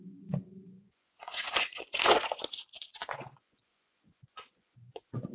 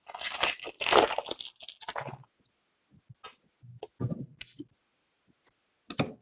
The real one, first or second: second